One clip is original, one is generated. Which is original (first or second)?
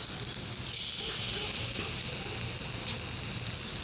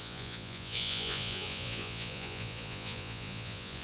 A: first